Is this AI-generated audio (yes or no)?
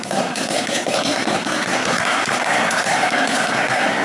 yes